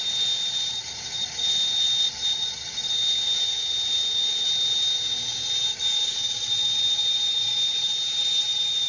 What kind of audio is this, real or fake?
real